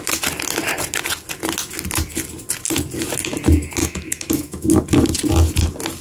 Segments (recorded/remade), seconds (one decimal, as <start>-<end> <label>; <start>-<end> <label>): 0.0-3.8 recorded; 3.8-4.7 remade; 4.7-6.0 recorded